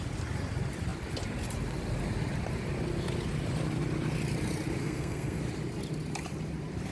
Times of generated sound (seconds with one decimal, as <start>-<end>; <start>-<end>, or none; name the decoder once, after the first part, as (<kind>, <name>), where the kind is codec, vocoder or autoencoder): 4.8-5.4 (codec, SNAC)